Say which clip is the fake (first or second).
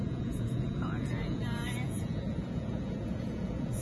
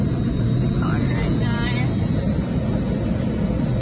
first